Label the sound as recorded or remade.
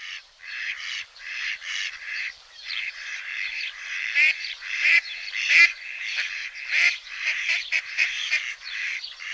remade